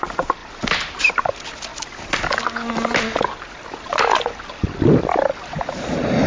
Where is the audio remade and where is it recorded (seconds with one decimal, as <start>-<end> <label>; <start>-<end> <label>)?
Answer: 0.0-6.3 recorded